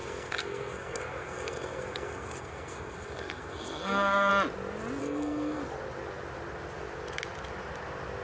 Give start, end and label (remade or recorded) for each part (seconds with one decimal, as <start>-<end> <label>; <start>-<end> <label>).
0.0-4.3 remade; 4.3-5.0 recorded; 5.0-5.6 remade; 5.6-8.2 recorded